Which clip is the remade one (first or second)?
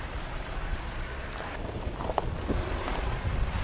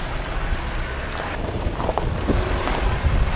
first